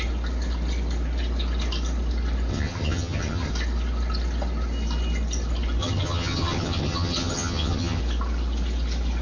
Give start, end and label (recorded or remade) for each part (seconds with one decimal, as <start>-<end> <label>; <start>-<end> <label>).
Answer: 0.0-2.5 recorded; 2.5-3.5 remade; 3.5-5.8 recorded; 5.8-8.0 remade; 8.0-9.2 recorded